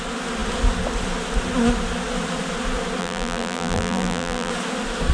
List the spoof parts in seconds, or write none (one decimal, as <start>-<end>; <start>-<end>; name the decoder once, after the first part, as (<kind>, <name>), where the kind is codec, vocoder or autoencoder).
3.0-4.5 (vocoder, BigVGAN v2)